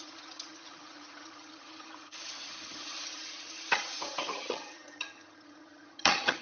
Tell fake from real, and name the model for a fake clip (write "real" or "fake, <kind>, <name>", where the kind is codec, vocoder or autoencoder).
fake, vocoder, HiFi-GAN